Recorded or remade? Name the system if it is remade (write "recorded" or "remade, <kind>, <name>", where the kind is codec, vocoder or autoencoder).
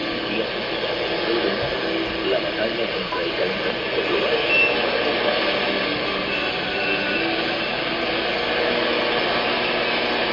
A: recorded